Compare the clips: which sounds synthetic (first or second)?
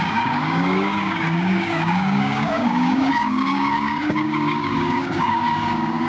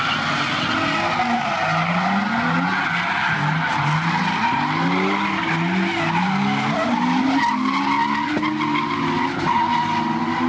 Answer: first